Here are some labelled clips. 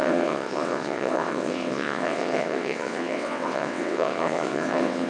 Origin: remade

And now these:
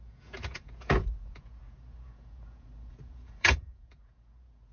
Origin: remade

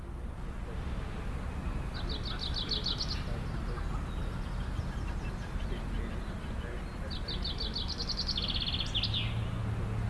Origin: recorded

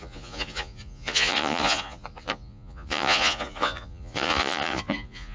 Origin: remade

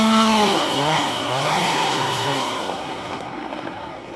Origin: remade